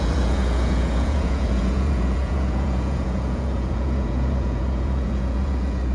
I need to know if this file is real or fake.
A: fake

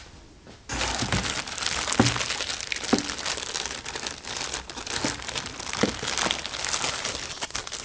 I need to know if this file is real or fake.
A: real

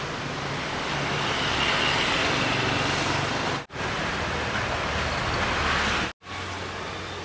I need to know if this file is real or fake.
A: real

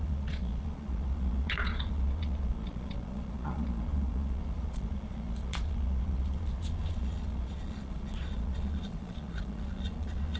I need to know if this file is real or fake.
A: fake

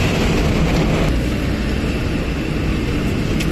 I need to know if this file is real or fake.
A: real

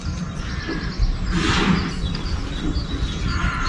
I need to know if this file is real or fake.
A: real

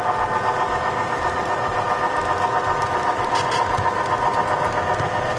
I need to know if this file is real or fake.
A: real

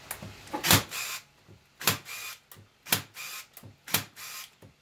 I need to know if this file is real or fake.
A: real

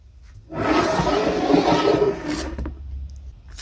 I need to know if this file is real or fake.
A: real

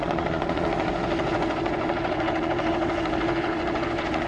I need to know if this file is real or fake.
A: fake